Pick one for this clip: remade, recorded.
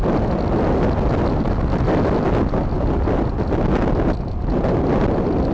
recorded